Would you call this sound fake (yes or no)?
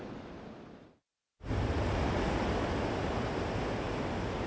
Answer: no